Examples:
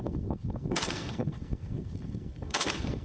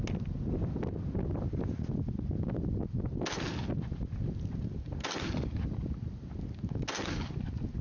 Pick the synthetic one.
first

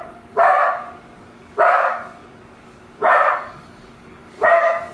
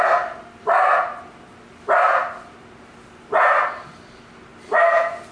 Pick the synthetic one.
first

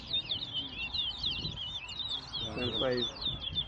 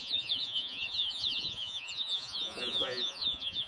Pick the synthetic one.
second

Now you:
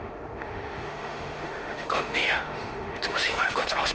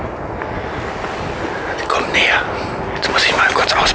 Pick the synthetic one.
first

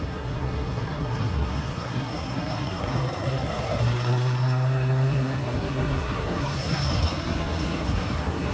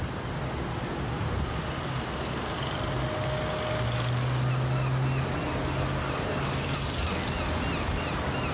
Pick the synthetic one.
first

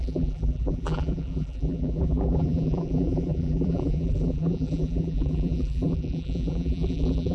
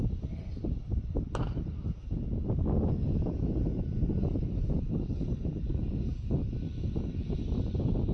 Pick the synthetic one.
first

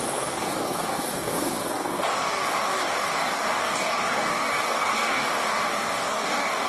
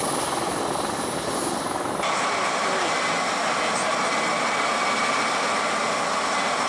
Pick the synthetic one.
first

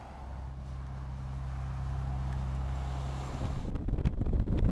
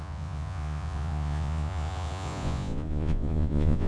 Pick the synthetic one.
second